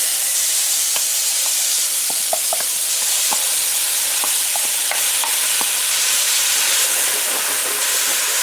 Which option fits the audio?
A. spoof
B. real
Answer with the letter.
A